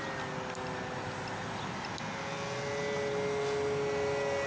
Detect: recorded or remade recorded